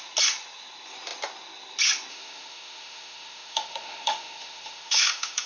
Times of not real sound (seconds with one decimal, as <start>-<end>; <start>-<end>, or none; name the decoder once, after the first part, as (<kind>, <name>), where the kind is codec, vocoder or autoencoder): 2.1-5.5 (autoencoder, DAC-VAE)

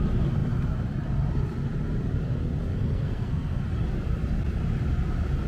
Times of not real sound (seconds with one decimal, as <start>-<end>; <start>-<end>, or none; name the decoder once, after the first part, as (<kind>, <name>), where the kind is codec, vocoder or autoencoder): 2.7-3.6 (codec, SNAC)

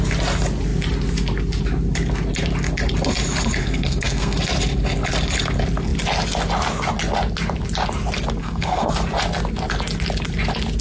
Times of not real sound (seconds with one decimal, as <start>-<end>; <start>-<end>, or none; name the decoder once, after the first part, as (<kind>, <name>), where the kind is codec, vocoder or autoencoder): 3.6-4.4 (codec, SNAC); 8.4-8.9

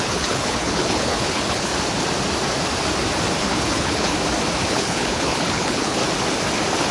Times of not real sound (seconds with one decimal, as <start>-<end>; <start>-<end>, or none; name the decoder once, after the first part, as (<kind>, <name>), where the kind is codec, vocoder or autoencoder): 0.0-1.7 (codec, HILCodec); 3.4-4.1; 4.7-6.0

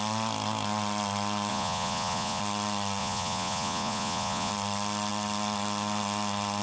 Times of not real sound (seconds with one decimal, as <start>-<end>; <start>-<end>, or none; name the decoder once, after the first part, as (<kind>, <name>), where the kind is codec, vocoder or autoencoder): 1.5-2.4 (vocoder, Vocos); 3.0-4.5

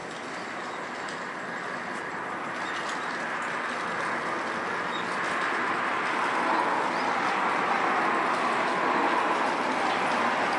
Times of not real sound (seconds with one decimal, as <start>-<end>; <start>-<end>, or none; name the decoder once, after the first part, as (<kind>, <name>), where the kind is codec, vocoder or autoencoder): none